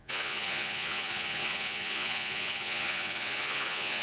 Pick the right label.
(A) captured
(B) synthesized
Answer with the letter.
B